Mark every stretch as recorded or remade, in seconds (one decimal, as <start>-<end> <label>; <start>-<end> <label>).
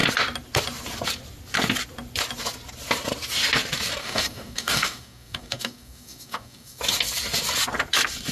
0.0-4.0 recorded; 4.0-6.8 remade; 6.8-8.3 recorded